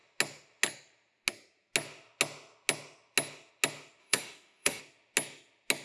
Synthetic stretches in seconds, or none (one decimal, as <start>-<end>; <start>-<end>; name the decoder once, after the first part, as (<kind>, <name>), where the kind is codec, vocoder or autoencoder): 4.0-4.8 (autoencoder, DAC-VAE)